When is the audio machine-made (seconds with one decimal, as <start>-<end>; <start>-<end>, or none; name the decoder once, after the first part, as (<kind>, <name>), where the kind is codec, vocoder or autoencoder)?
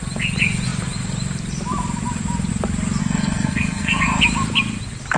3.0-4.2 (codec, SNAC)